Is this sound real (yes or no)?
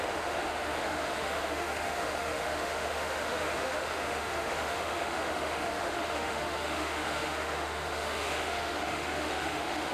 no